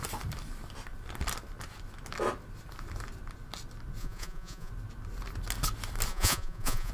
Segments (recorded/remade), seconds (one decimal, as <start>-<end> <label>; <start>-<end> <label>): 0.0-4.0 recorded; 4.0-4.7 remade; 4.7-6.1 recorded; 6.1-6.9 remade